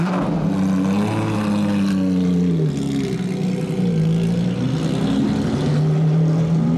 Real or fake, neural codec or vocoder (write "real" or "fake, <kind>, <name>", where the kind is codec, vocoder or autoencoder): real